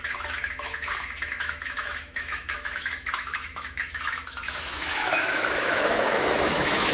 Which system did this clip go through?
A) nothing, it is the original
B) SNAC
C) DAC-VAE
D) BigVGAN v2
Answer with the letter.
C